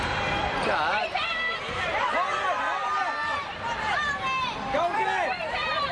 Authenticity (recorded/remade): remade